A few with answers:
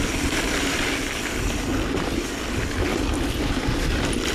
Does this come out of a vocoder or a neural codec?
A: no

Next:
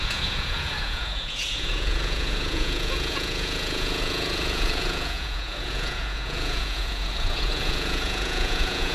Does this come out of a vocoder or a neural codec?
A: yes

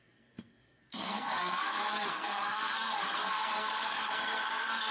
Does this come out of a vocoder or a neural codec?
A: yes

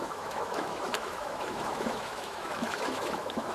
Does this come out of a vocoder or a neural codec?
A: yes